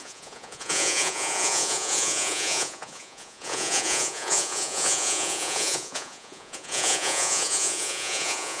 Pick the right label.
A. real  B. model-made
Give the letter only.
B